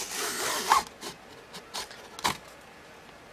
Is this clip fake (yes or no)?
no